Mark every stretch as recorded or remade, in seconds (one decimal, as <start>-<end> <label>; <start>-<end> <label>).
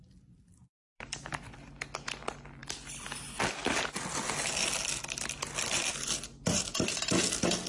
0.0-0.9 recorded; 0.9-2.2 remade; 2.2-7.7 recorded